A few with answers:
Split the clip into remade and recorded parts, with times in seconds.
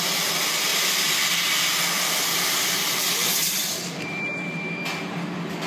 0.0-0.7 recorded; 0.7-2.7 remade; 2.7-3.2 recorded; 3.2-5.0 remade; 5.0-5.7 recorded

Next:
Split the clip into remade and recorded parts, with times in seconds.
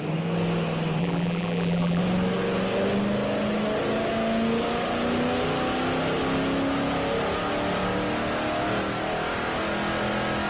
0.0-1.0 recorded; 1.0-2.0 remade; 2.0-10.5 recorded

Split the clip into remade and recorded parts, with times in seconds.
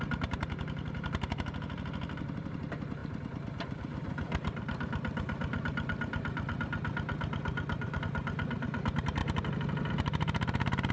0.0-10.9 remade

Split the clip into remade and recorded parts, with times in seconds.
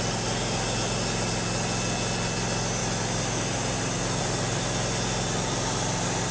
0.0-6.3 recorded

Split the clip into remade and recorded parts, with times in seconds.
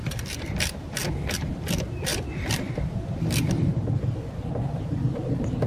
0.0-1.1 remade; 1.1-2.1 recorded; 2.1-4.3 remade; 4.3-5.7 recorded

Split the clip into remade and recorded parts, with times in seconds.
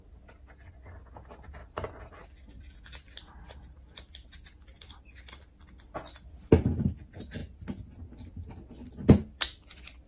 0.0-4.3 recorded; 4.3-5.0 remade; 5.0-10.1 recorded